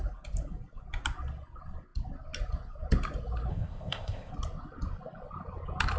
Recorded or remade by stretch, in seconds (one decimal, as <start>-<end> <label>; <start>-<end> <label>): 0.0-3.5 recorded; 3.5-4.3 remade; 4.3-6.0 recorded